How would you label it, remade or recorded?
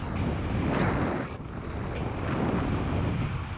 recorded